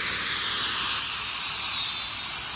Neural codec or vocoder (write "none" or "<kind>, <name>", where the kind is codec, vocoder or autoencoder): none